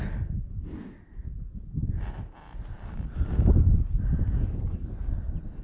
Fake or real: real